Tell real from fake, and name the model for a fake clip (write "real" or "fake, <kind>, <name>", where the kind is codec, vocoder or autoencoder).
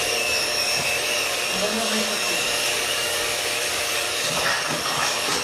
fake, codec, DAC